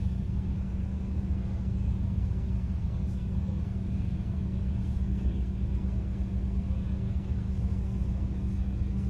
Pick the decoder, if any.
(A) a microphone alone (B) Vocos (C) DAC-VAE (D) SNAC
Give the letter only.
D